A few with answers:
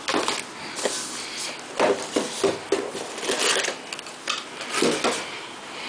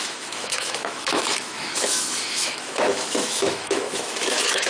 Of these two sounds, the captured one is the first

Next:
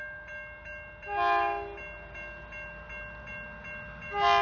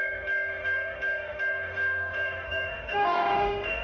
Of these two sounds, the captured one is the first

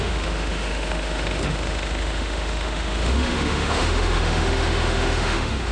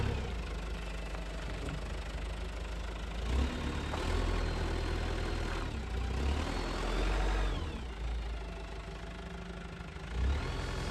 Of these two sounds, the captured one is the second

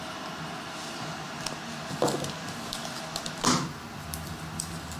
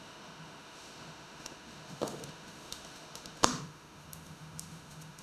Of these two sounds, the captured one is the first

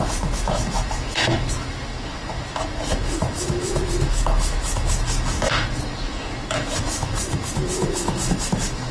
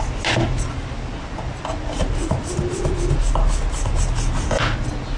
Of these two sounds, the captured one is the second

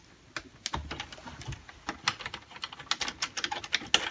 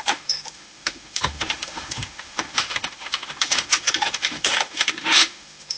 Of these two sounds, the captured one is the first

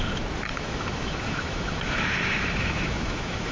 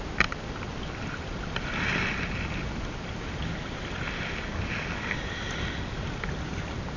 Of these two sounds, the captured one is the second